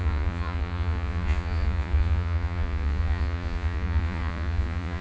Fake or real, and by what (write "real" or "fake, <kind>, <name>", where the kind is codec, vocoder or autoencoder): fake, vocoder, Vocos